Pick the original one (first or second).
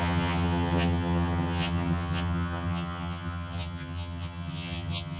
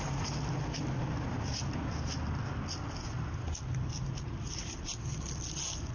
second